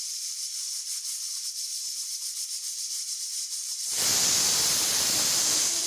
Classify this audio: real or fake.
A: fake